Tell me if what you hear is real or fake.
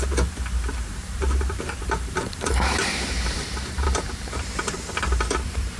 fake